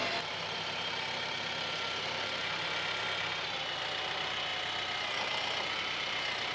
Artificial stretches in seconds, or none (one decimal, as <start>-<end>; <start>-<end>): 0.0-2.5